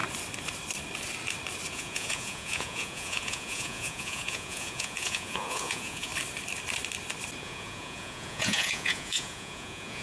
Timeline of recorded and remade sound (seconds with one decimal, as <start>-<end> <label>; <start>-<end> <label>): 0.0-1.7 recorded; 1.7-6.1 remade; 6.1-7.4 recorded; 7.4-10.0 remade